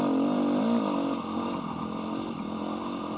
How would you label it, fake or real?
real